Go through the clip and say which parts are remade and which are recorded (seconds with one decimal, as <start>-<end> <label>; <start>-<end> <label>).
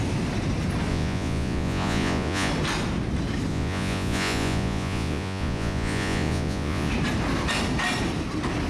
0.0-0.9 recorded; 0.9-2.5 remade; 2.5-3.5 recorded; 3.5-6.9 remade; 6.9-8.7 recorded